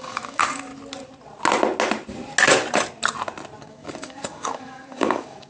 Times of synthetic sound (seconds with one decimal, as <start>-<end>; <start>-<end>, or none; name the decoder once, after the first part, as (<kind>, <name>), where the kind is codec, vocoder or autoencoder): 0.0-0.7 (codec, DAC); 3.6-5.5